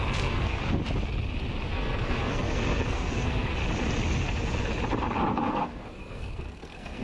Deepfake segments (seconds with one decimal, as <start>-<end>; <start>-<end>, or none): 0.0-0.8; 1.7-3.6; 5.3-7.0